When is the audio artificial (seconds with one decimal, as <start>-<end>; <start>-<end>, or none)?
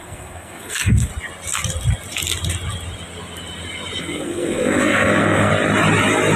0.0-1.1; 4.0-5.5